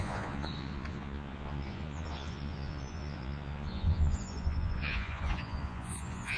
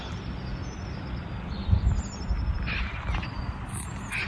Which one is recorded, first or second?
second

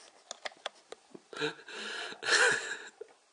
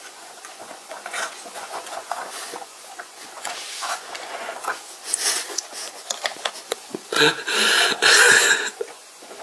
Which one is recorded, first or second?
first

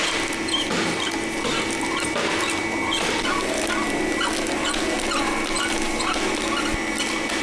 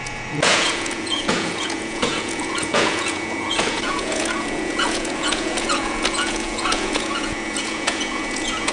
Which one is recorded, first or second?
first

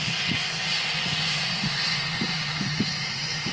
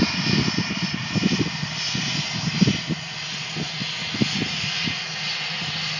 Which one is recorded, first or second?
second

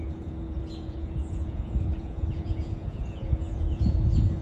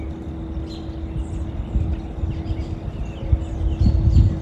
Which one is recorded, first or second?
second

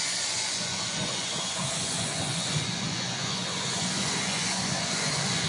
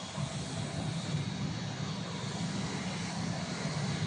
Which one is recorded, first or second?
second